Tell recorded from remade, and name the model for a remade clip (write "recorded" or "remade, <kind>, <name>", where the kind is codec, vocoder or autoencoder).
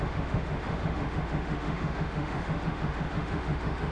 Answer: remade, autoencoder, DAC-VAE